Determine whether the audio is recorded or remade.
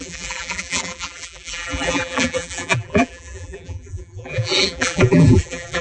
remade